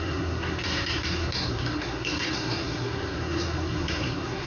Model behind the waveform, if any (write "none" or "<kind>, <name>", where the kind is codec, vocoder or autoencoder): codec, SNAC